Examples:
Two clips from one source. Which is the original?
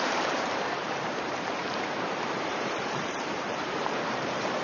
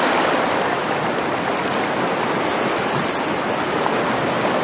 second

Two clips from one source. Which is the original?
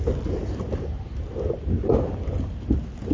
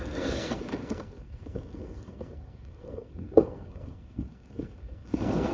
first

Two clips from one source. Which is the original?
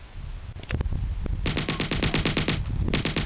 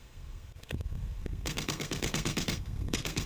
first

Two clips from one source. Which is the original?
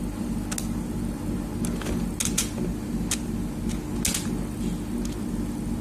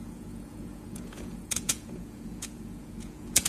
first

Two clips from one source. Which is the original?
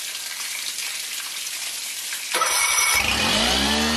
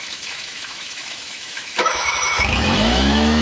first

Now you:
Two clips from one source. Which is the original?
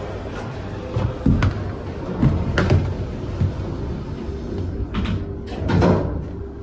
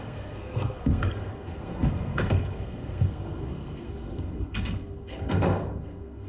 first